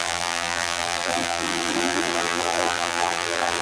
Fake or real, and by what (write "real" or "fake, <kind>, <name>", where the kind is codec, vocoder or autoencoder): fake, vocoder, BigVGAN v2